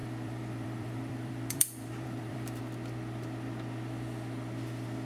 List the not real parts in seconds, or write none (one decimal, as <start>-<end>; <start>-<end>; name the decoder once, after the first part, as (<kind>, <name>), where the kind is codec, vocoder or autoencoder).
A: 0.0-2.6 (vocoder, BigVGAN v2)